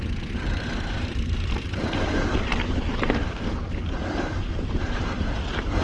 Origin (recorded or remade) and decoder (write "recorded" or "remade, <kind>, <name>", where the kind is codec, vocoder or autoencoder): remade, vocoder, BigVGAN v2